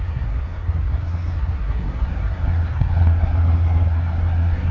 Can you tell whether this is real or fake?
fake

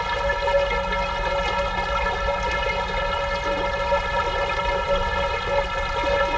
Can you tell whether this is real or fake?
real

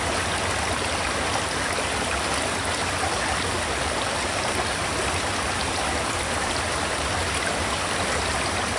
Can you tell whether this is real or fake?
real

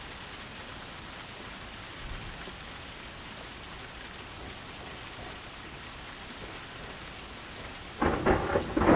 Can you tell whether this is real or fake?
real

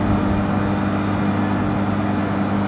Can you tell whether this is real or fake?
real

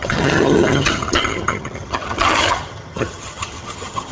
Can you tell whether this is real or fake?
fake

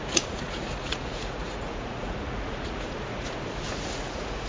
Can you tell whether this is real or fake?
fake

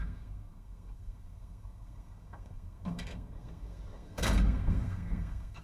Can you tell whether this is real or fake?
fake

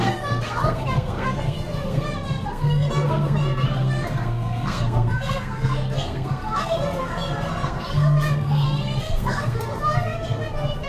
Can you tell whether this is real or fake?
fake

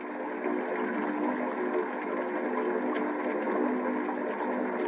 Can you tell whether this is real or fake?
real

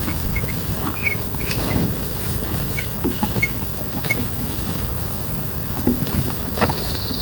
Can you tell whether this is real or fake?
fake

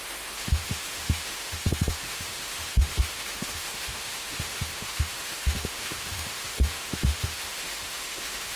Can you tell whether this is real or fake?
fake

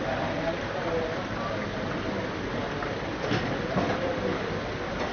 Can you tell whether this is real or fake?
real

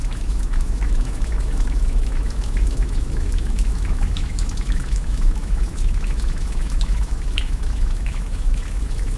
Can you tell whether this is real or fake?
fake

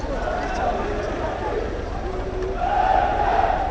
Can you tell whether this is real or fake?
fake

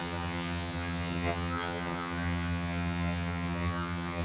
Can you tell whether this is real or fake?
fake